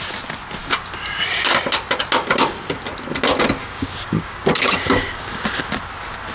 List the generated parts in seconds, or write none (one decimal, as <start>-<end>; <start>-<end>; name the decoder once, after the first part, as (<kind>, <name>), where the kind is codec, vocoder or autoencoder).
0.6-1.2 (codec, DAC); 3.6-5.6